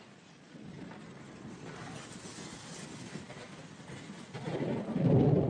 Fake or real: real